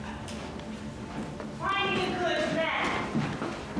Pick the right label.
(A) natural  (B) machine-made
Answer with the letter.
A